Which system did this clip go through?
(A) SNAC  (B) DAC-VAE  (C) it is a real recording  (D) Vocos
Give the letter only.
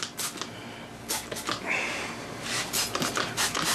C